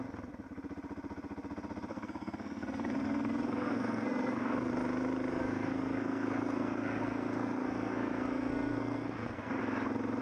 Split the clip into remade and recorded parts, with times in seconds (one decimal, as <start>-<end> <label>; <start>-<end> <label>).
0.0-1.9 recorded; 1.9-4.7 remade; 4.7-5.3 recorded; 5.3-9.6 remade; 9.6-10.2 recorded